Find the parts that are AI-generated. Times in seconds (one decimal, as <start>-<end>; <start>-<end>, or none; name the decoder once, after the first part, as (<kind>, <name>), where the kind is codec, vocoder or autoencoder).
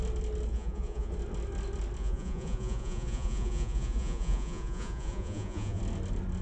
0.5-1.1 (vocoder, Vocos); 2.0-5.8